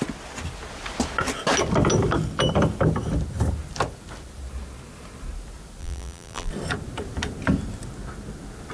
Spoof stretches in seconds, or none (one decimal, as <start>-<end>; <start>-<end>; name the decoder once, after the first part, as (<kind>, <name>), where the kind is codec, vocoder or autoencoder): 5.8-6.5 (vocoder, BigVGAN v2)